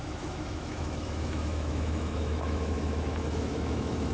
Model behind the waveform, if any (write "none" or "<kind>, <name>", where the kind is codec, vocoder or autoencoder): autoencoder, DAC-VAE